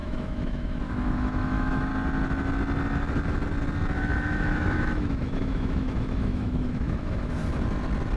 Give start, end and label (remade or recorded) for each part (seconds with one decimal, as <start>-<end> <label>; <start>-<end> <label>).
0.0-1.9 remade; 1.9-4.0 recorded; 4.0-7.4 remade; 7.4-8.2 recorded